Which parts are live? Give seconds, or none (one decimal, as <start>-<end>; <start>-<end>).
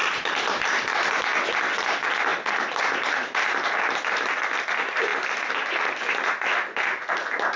0.0-7.6